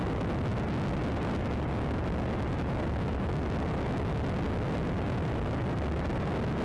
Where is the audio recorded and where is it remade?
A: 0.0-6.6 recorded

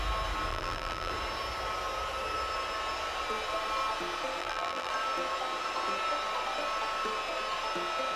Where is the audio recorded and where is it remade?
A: 0.0-0.5 recorded; 0.5-1.1 remade; 1.1-4.4 recorded; 4.4-4.9 remade; 4.9-8.2 recorded